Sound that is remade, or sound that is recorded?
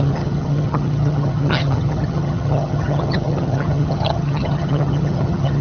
remade